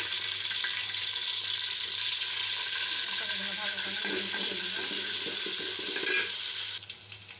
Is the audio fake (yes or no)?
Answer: no